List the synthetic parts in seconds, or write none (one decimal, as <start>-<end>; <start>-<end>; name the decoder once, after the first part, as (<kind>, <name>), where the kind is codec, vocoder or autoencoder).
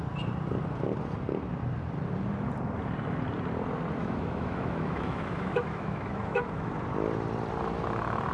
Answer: 4.0-6.7 (autoencoder, DAC-VAE)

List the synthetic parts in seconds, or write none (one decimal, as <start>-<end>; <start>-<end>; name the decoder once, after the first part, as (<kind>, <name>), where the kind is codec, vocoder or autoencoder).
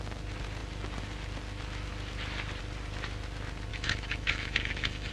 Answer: 3.7-5.1 (autoencoder, DAC-VAE)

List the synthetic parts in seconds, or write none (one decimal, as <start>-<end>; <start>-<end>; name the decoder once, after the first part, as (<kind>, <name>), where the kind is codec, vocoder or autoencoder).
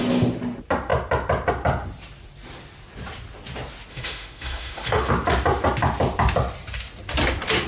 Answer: 3.9-5.1 (autoencoder, DAC-VAE)